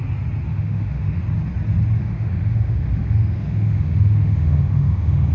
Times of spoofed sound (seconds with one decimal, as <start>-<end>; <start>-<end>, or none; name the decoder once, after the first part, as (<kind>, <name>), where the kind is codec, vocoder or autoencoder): 0.5-1.2 (autoencoder, DAC-VAE); 2.0-5.3